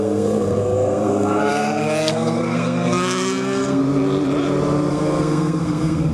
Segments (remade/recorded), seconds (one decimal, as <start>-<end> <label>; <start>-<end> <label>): 0.0-3.8 remade; 3.8-4.9 recorded; 4.9-6.1 remade

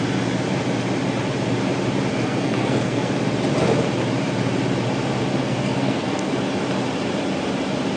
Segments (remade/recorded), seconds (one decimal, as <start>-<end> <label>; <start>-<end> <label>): 0.0-2.1 recorded; 2.1-3.1 remade; 3.1-5.4 recorded; 5.4-6.3 remade; 6.3-8.0 recorded

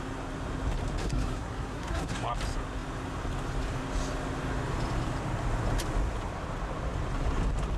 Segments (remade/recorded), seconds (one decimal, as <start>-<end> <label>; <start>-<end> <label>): 0.0-1.0 recorded; 1.0-2.3 remade; 2.3-7.8 recorded

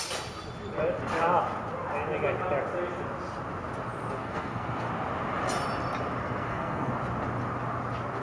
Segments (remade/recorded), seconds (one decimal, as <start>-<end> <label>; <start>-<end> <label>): 0.0-4.2 recorded; 4.2-4.9 remade; 4.9-6.2 recorded; 6.2-6.9 remade; 6.9-8.2 recorded

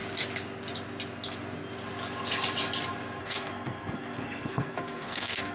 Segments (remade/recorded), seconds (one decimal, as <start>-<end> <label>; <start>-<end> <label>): 0.0-3.2 recorded; 3.2-5.5 remade